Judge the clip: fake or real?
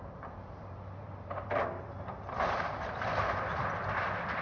fake